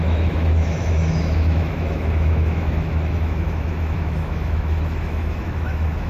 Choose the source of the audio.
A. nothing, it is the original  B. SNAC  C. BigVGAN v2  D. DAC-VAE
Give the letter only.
D